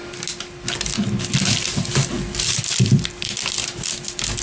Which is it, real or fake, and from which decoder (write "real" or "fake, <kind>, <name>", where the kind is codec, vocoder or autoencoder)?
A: real